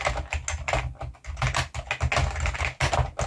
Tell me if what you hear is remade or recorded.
recorded